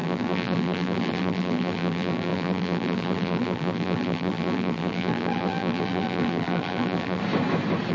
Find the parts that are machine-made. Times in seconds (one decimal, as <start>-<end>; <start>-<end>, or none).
0.0-7.2